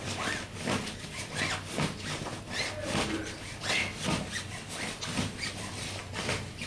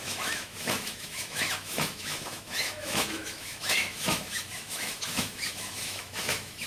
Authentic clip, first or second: first